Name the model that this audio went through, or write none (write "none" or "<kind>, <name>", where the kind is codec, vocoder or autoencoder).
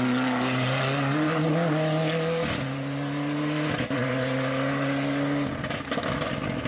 none